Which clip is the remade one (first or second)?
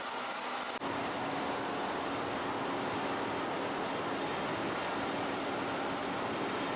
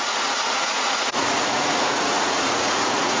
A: second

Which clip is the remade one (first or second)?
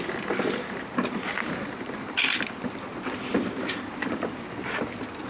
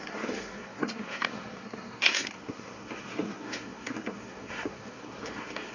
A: second